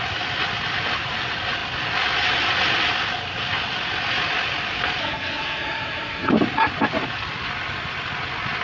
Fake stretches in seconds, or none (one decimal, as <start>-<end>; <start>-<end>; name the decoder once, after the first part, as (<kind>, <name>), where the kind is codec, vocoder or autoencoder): 5.0-6.3 (codec, SNAC)